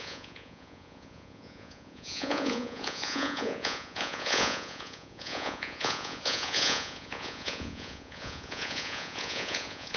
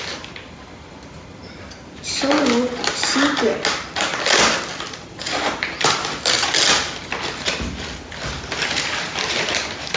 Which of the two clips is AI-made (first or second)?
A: first